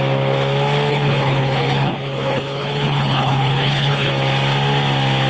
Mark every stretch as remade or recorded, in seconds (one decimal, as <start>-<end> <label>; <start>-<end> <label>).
0.0-0.9 recorded; 0.9-4.1 remade; 4.1-5.3 recorded